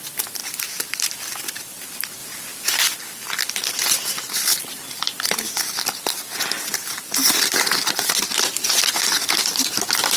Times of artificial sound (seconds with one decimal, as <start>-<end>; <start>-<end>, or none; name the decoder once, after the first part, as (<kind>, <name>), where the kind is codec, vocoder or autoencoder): 0.4-1.8 (vocoder, BigVGAN v2)